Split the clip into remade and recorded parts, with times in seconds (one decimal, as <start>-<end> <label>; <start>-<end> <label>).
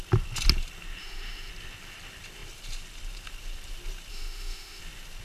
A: 0.0-1.0 recorded; 1.0-1.5 remade; 1.5-4.1 recorded; 4.1-4.8 remade; 4.8-5.2 recorded